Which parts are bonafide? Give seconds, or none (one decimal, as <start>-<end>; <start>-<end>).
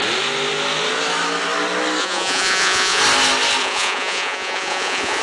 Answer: 0.0-2.0; 3.0-3.6